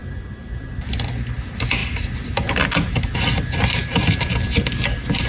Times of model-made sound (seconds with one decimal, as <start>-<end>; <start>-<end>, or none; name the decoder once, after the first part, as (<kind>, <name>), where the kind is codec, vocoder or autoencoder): none